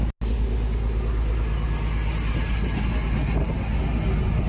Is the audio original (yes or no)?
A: yes